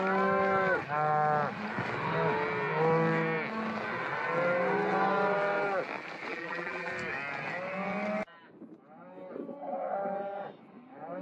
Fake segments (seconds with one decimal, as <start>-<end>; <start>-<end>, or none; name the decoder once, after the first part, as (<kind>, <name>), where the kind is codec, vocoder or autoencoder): 6.3-6.9 (vocoder, BigVGAN v2)